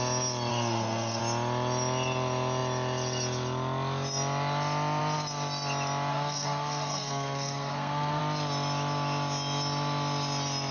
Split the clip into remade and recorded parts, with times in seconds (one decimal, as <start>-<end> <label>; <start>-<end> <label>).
0.0-0.5 recorded; 0.5-1.2 remade; 1.2-6.1 recorded; 6.1-8.2 remade; 8.2-10.7 recorded